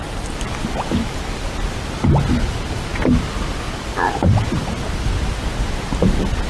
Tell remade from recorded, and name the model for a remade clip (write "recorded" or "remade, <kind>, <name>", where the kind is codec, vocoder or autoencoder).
recorded